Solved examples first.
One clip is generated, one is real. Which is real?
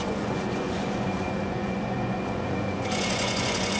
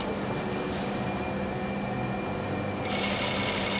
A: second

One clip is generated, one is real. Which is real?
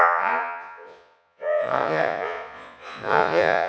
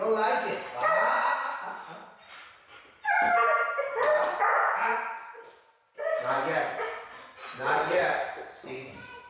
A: second